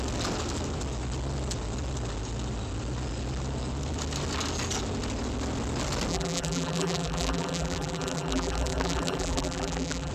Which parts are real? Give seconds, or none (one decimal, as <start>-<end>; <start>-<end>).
0.0-6.1